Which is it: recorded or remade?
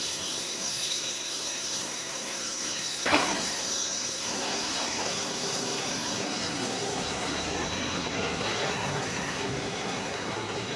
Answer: remade